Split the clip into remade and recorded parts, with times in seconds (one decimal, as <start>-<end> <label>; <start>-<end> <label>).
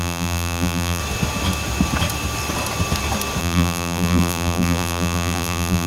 0.0-1.0 remade; 1.0-3.4 recorded; 3.4-5.9 remade